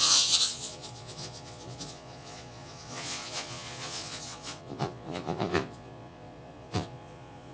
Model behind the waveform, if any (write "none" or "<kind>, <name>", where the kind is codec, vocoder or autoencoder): vocoder, Vocos